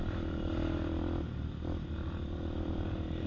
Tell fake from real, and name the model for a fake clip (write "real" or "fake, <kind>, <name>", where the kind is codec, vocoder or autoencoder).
real